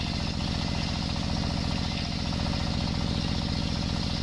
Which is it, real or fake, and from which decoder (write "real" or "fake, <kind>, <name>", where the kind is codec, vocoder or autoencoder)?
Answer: real